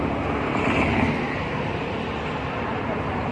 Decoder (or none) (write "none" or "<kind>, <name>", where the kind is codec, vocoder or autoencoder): vocoder, BigVGAN v2